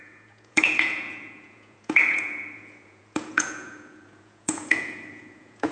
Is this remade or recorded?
remade